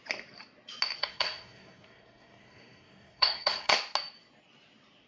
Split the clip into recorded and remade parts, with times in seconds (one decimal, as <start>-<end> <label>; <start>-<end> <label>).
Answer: 0.0-1.0 recorded; 1.0-3.7 remade; 3.7-5.1 recorded